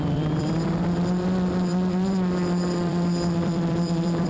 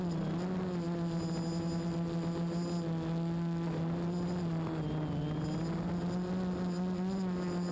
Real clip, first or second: second